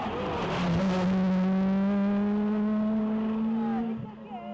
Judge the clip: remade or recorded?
recorded